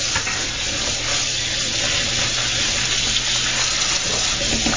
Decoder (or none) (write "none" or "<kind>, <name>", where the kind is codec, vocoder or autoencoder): none